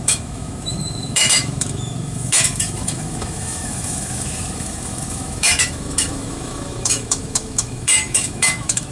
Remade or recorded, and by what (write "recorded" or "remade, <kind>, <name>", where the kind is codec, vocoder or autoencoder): remade, autoencoder, DAC-VAE